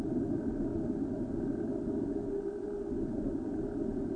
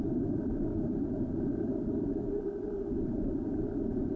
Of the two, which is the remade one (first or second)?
second